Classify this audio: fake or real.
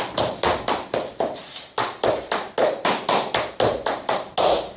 real